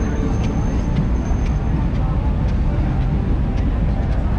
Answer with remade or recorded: recorded